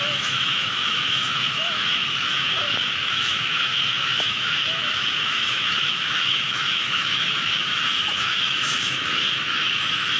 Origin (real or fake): fake